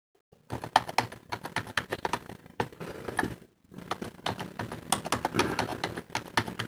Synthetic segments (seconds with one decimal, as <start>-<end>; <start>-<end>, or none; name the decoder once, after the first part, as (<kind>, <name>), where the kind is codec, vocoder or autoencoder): 1.9-3.8 (vocoder, BigVGAN v2)